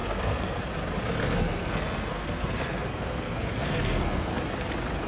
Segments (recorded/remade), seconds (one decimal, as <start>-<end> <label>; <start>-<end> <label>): 0.0-0.6 remade; 0.6-1.2 recorded; 1.2-4.3 remade; 4.3-5.1 recorded